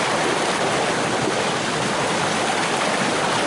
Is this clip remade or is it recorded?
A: recorded